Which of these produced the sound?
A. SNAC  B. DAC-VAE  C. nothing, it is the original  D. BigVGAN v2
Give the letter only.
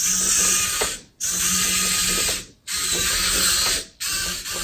C